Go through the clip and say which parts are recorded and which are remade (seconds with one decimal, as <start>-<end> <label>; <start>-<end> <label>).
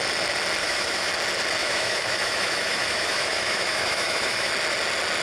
0.0-0.6 recorded; 0.6-1.1 remade; 1.1-1.6 recorded; 1.6-4.5 remade; 4.5-5.2 recorded